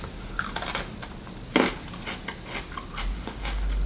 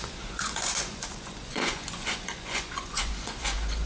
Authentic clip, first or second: first